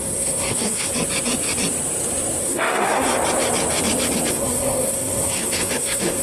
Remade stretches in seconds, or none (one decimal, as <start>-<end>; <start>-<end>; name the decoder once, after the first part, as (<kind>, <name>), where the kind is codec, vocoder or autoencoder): 0.0-0.9 (codec, SNAC); 2.4-3.1; 4.3-6.2